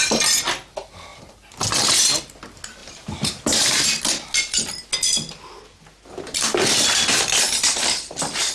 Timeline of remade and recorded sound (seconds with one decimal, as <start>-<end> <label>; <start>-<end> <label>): 0.0-2.8 recorded; 2.8-4.0 remade; 4.0-8.5 recorded